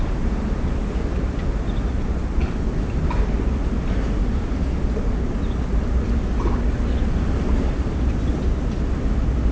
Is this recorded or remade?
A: recorded